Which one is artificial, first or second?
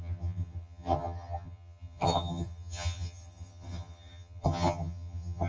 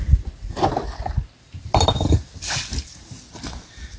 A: first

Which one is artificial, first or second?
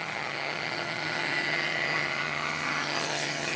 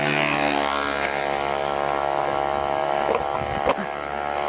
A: first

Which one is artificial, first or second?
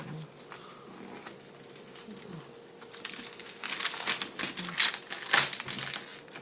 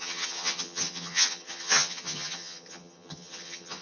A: second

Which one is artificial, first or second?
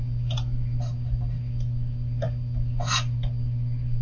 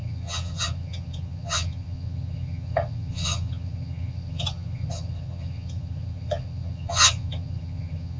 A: second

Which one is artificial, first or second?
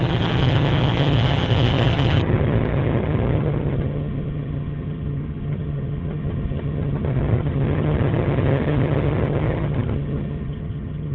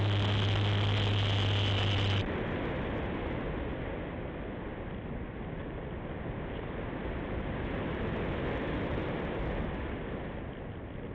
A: first